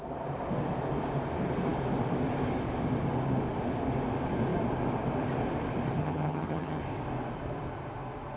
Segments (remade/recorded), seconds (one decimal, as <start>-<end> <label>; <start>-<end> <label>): 0.0-6.0 recorded; 6.0-6.8 remade; 6.8-8.4 recorded